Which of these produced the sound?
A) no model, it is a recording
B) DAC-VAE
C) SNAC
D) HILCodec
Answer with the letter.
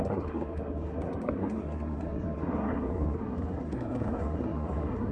C